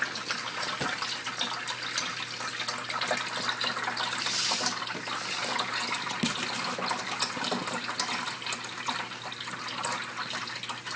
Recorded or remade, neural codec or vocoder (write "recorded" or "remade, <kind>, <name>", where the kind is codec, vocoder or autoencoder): recorded